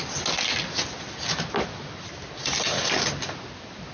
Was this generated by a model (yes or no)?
no